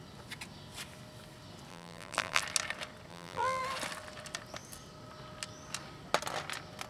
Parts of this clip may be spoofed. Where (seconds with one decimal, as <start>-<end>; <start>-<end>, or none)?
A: 1.7-2.4; 3.1-3.6